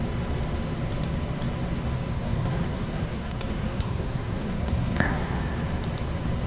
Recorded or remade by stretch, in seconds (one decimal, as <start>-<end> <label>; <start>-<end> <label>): 0.0-2.1 recorded; 2.1-5.4 remade; 5.4-6.5 recorded